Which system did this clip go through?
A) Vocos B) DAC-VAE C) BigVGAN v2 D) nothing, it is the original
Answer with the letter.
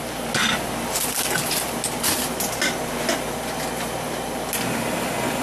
D